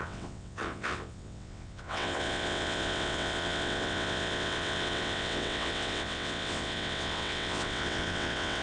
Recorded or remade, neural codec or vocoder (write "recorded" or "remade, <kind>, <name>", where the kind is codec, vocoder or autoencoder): remade, vocoder, WaveNeXt